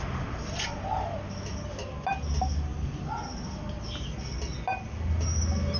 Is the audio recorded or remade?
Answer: recorded